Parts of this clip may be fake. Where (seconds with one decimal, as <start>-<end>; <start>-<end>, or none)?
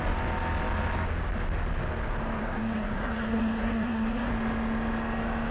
2.4-4.3